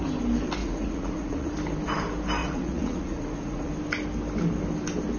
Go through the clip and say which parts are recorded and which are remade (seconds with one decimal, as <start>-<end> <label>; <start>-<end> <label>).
0.0-0.6 recorded; 0.6-1.5 remade; 1.5-2.4 recorded; 2.4-3.7 remade; 3.7-5.2 recorded